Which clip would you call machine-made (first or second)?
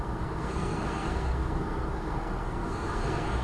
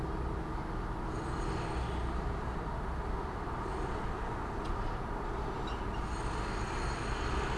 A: first